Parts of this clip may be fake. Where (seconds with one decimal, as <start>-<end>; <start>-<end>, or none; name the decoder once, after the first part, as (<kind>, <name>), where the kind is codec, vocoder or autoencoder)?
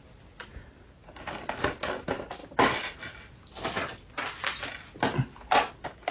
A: none